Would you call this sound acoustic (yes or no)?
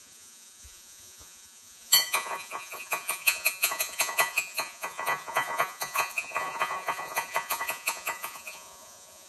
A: no